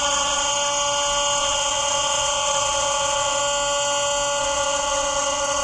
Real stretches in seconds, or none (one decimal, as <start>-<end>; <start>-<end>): 0.5-1.4; 3.4-4.4